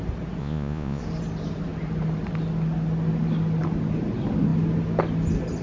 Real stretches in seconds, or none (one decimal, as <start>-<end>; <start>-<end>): 0.0-0.4; 1.0-5.6